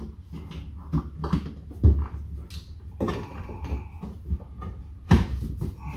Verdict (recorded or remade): recorded